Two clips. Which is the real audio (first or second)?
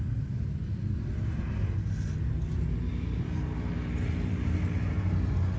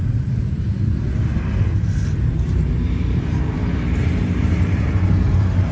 first